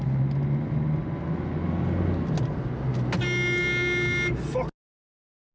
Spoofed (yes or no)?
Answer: no